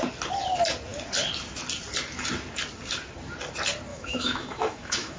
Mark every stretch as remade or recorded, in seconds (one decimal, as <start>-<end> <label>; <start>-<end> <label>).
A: 0.0-3.9 recorded; 3.9-5.2 remade